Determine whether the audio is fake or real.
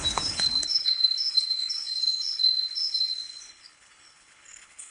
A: fake